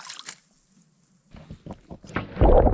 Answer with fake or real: real